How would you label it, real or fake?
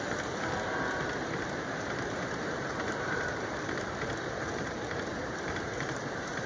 fake